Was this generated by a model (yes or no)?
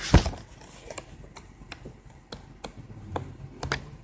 no